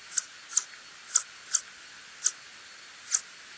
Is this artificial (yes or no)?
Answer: no